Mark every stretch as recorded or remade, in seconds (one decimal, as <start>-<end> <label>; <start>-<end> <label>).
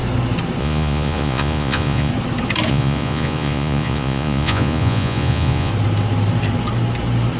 0.0-0.6 recorded; 0.6-2.1 remade; 2.1-2.7 recorded; 2.7-5.7 remade; 5.7-7.4 recorded